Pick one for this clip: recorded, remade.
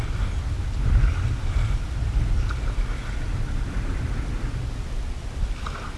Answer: recorded